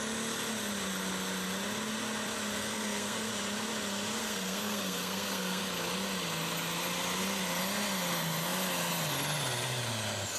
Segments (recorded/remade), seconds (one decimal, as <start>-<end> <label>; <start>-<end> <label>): 0.0-2.6 recorded; 2.6-3.3 remade; 3.3-4.2 recorded; 4.2-5.6 remade; 5.6-10.4 recorded